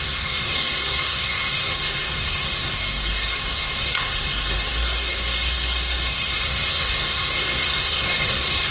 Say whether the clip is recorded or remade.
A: remade